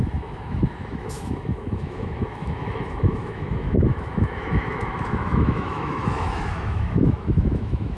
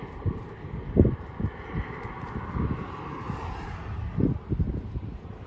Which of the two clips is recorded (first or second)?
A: second